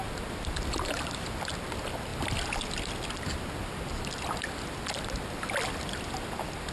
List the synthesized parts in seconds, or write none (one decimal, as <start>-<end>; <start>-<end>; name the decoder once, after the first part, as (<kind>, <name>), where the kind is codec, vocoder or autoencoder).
none